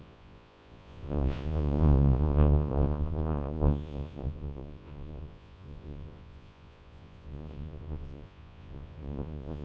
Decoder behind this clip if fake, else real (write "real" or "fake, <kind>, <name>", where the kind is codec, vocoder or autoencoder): fake, vocoder, Vocos